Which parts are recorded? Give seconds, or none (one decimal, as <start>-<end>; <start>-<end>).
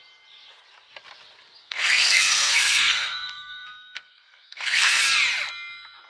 0.0-1.6; 5.0-6.1